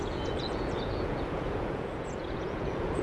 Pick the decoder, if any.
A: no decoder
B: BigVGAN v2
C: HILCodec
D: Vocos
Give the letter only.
D